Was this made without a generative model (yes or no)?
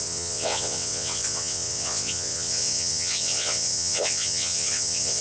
no